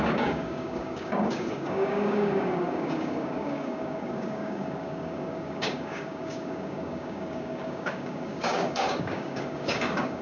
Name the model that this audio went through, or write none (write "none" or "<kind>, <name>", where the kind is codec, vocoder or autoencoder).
codec, DAC